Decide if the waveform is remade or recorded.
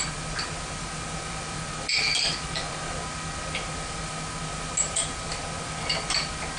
recorded